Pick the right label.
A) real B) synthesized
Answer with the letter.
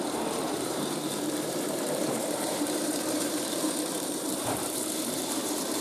B